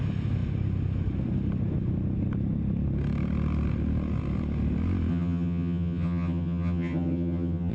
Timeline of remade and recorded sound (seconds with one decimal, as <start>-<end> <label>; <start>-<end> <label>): 0.0-5.1 recorded; 5.1-7.7 remade